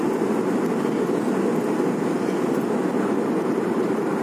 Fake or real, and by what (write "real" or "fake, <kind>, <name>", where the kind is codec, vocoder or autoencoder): real